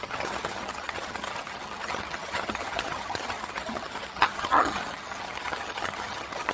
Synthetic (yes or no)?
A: yes